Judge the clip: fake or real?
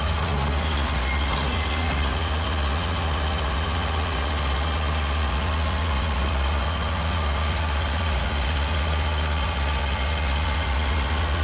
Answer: fake